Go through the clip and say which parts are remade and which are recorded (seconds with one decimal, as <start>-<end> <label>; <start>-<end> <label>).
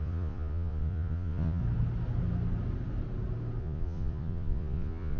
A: 0.0-1.6 remade; 1.6-3.6 recorded; 3.6-5.2 remade